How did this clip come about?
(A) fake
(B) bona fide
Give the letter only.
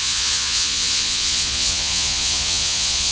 A